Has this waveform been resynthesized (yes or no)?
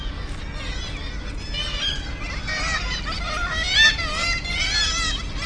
no